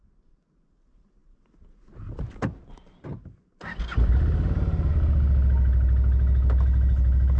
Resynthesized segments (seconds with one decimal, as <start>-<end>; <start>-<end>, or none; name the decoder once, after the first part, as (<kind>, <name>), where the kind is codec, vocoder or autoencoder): none